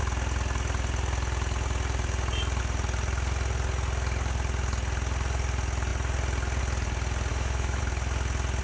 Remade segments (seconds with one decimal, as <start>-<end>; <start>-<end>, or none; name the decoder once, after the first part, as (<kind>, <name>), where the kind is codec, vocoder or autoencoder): 7.3-7.8 (autoencoder, DAC-VAE)